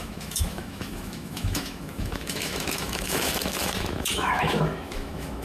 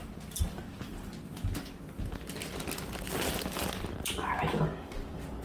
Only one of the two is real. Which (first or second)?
second